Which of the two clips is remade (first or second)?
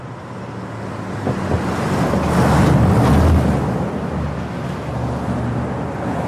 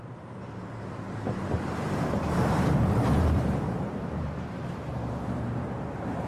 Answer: second